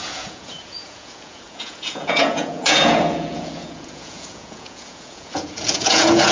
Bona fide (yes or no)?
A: no